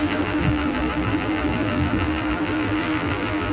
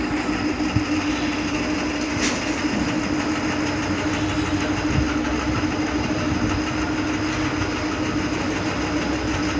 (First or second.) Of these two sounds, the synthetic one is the first